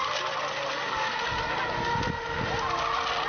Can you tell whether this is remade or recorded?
recorded